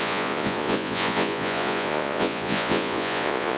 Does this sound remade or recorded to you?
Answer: remade